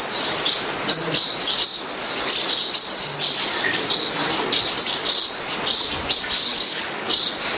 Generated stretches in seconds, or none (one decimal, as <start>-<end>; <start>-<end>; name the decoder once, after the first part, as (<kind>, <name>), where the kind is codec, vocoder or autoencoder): 6.5-7.1 (codec, DAC)